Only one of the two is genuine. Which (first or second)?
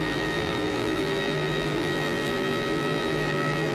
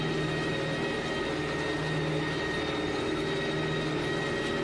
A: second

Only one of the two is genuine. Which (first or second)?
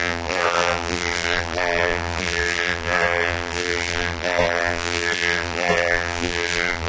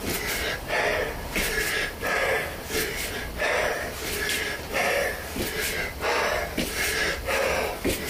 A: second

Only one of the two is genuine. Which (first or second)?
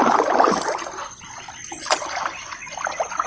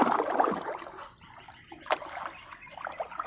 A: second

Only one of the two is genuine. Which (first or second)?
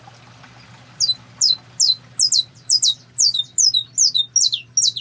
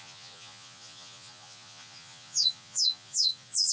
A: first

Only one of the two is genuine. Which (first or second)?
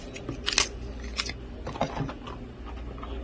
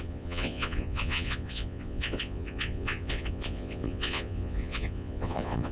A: first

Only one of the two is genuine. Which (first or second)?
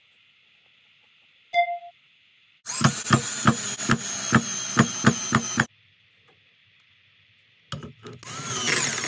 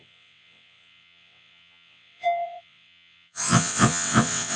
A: first